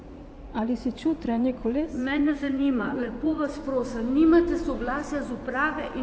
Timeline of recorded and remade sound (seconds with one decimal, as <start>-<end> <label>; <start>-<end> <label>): 0.0-3.6 remade; 3.6-6.0 recorded